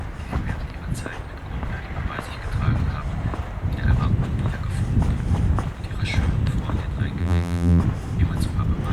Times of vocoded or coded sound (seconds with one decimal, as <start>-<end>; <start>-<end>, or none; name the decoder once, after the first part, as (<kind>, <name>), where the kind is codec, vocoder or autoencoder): 7.2-7.8 (vocoder, BigVGAN v2)